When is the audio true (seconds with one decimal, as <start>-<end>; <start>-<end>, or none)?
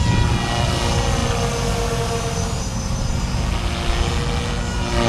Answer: 0.0-5.1